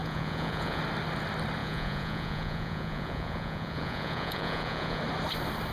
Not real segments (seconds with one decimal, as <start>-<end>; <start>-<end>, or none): 0.0-0.8; 1.6-5.0